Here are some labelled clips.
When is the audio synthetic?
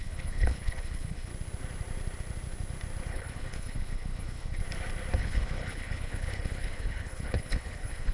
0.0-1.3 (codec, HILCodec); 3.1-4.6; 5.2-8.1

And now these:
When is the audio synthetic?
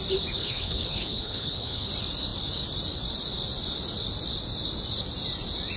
0.4-1.9 (codec, HILCodec)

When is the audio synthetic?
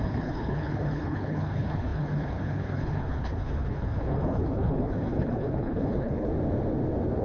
0.0-6.3 (codec, HILCodec)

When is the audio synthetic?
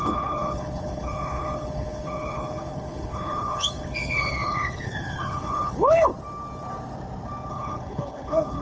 0.0-6.1 (codec, HILCodec); 7.5-8.6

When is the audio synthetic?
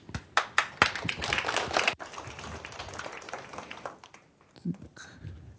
none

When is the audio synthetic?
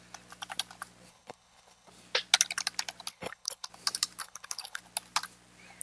1.1-1.9 (codec, HILCodec); 3.1-3.7; 4.2-4.8